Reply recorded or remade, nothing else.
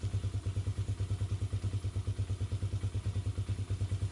recorded